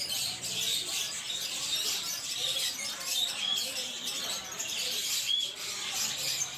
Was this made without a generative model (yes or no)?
no